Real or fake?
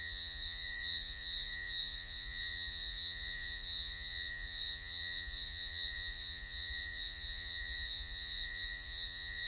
fake